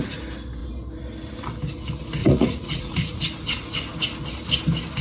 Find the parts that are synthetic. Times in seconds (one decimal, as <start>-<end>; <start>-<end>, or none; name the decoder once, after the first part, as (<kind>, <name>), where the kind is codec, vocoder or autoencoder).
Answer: 2.2-3.2 (vocoder, Vocos)